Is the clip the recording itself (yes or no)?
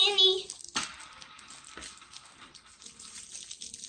yes